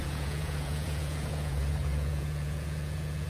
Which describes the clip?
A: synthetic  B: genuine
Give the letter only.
A